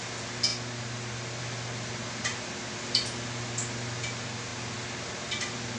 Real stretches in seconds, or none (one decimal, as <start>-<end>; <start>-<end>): 0.0-5.8